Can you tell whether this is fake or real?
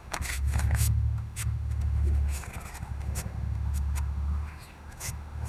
fake